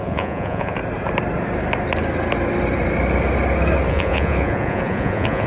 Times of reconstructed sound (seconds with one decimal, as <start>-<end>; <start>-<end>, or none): 0.0-0.8; 3.9-5.5